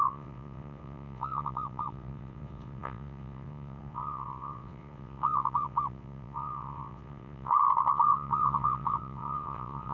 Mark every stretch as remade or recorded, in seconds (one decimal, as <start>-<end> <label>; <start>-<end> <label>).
0.0-9.9 remade